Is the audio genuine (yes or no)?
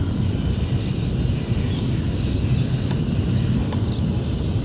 yes